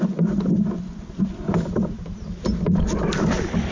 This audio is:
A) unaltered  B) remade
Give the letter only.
A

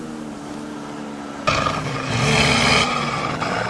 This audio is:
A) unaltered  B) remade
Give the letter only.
A